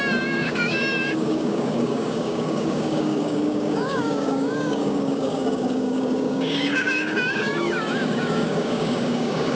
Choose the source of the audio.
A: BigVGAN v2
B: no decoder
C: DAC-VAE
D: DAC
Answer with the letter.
D